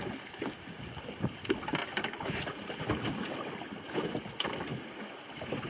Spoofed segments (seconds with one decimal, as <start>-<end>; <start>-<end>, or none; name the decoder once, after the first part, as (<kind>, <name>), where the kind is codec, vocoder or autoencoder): none